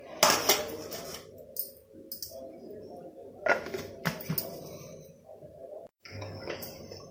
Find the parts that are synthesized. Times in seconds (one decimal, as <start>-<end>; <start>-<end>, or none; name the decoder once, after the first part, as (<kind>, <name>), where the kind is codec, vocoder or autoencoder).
5.9-6.5 (codec, DAC)